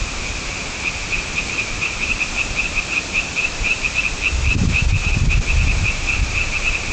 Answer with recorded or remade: remade